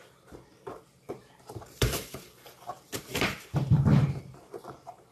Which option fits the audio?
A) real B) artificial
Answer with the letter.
B